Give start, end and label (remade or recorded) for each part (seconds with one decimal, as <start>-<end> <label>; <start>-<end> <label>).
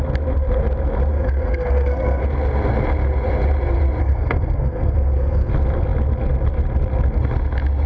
0.0-1.1 recorded; 1.1-2.2 remade; 2.2-4.0 recorded; 4.0-5.5 remade; 5.5-7.9 recorded